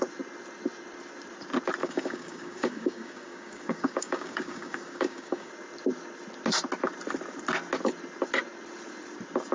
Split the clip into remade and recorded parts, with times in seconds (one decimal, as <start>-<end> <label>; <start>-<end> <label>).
0.0-1.8 recorded; 1.8-5.5 remade; 5.5-9.5 recorded